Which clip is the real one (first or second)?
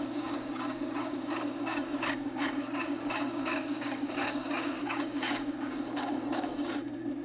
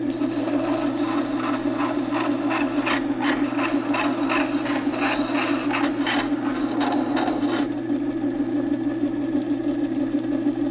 second